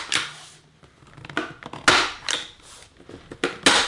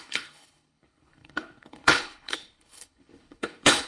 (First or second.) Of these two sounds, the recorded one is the first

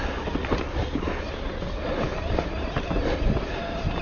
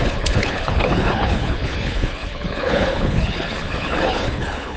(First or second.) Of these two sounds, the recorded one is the first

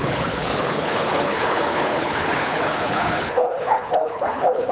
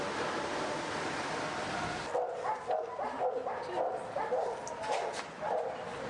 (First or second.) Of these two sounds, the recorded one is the second